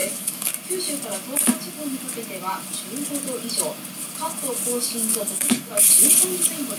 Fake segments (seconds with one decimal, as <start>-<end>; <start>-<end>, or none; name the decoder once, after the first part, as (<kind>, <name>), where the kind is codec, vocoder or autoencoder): 0.0-0.5 (codec, DAC); 4.7-5.7